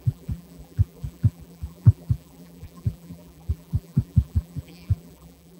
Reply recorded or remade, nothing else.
remade